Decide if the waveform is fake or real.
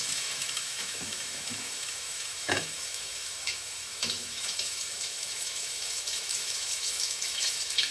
fake